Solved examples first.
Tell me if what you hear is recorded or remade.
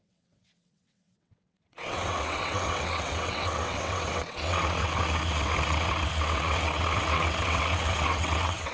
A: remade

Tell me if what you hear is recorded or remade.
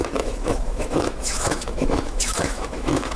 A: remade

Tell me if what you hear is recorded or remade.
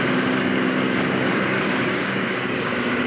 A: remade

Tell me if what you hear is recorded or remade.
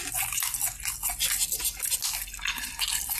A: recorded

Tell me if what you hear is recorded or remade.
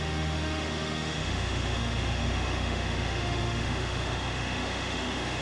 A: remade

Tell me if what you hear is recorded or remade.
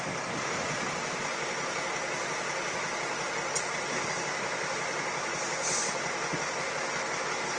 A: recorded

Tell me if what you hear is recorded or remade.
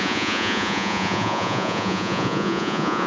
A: remade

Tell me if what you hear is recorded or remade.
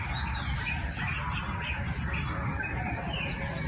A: recorded